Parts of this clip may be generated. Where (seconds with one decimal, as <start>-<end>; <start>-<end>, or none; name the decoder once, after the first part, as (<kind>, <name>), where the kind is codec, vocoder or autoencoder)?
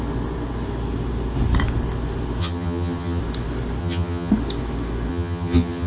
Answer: 2.4-3.2 (vocoder, HiFi-GAN); 3.8-4.3; 5.1-5.9